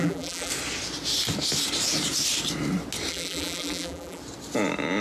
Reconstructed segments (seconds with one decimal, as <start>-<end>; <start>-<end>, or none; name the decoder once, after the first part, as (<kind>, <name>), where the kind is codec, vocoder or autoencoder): 0.0-0.5 (vocoder, BigVGAN v2); 3.1-4.2